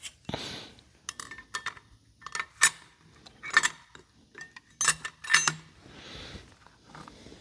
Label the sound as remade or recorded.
recorded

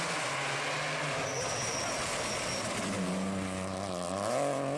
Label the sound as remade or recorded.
recorded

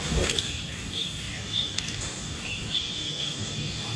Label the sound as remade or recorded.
remade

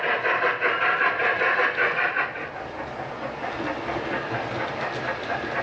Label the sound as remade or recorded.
recorded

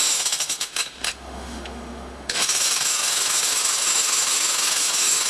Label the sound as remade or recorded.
remade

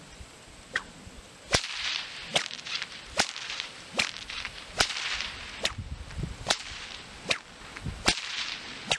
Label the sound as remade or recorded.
recorded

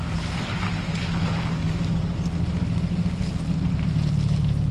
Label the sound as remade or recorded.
recorded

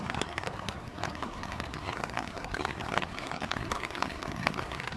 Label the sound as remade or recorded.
remade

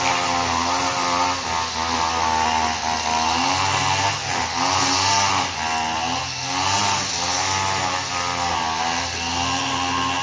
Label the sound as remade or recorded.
recorded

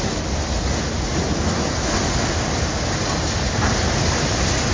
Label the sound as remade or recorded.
recorded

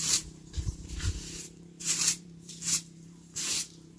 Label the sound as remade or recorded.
remade